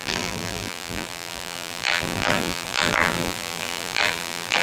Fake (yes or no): yes